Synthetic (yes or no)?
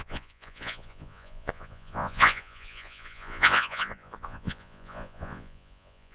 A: yes